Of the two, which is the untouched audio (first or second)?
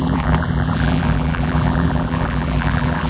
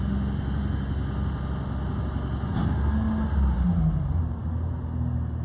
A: second